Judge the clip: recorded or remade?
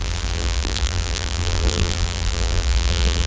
remade